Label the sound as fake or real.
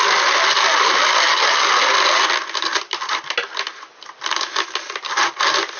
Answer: real